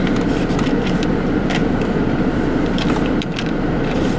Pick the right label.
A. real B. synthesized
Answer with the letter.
B